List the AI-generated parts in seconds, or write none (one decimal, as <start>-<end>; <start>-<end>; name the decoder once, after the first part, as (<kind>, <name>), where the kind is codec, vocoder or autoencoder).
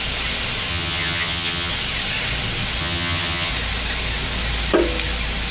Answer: 0.7-1.7 (vocoder, HiFi-GAN); 2.8-3.5